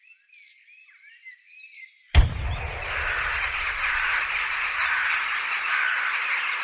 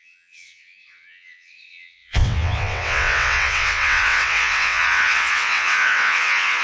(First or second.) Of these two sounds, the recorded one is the first